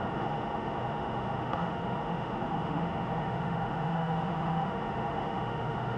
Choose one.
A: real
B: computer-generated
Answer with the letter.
B